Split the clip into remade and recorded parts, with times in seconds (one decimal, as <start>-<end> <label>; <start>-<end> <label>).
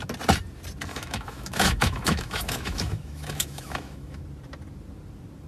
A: 0.0-0.9 recorded; 0.9-4.2 remade; 4.2-5.5 recorded